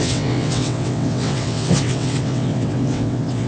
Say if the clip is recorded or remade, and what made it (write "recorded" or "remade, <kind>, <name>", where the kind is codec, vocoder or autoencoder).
remade, vocoder, WaveNeXt